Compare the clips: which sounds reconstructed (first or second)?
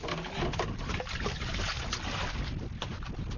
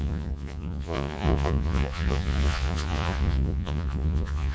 second